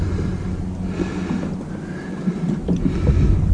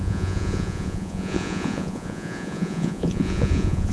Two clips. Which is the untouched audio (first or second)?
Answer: first